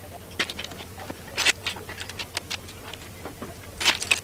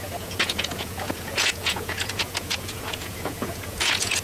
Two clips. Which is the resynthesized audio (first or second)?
second